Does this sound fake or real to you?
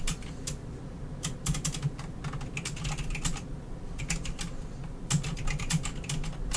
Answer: real